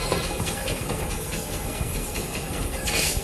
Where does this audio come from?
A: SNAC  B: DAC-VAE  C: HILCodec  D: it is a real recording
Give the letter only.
A